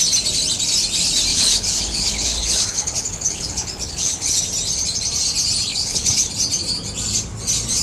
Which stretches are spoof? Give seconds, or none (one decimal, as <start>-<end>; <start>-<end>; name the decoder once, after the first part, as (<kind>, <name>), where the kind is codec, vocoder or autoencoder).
1.3-4.4 (codec, HILCodec); 5.7-6.3